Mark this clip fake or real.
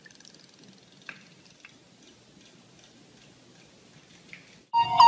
real